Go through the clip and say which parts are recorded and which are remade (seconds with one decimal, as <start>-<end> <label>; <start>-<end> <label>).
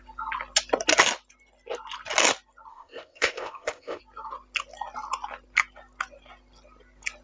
0.0-2.7 recorded; 2.7-4.0 remade; 4.0-7.2 recorded